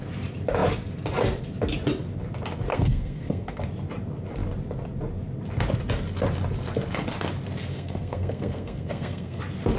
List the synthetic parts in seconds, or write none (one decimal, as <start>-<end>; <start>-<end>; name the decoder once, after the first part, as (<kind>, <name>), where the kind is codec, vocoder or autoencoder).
2.7-3.6 (codec, SNAC); 7.7-9.4